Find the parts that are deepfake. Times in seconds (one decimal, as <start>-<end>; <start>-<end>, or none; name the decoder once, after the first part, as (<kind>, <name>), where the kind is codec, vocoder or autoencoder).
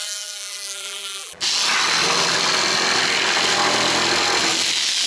0.0-1.4 (vocoder, BigVGAN v2)